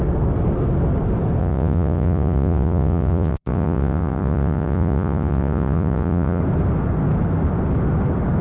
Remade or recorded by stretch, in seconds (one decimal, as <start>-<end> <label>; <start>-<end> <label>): 0.0-1.4 recorded; 1.4-6.4 remade; 6.4-8.4 recorded